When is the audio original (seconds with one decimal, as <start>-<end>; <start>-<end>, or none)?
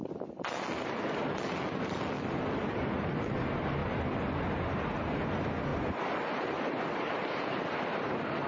0.0-5.7; 6.6-8.5